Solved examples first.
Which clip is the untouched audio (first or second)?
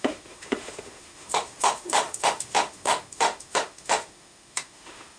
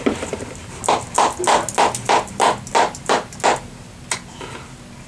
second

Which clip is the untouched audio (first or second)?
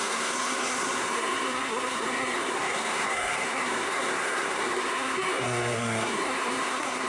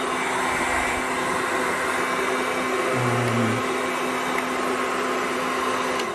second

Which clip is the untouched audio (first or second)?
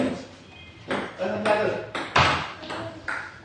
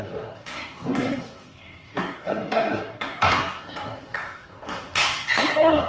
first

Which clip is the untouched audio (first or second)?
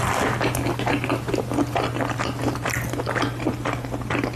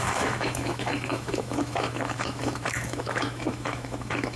first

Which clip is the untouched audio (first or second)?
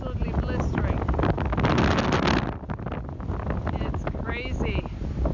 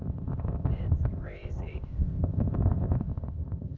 first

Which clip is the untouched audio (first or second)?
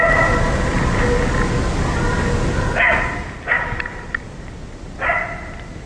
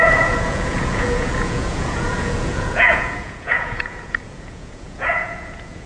first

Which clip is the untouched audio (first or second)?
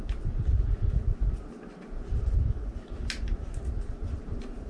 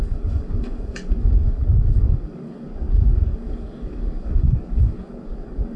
first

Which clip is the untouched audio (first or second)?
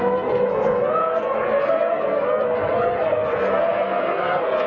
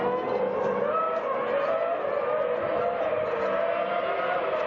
second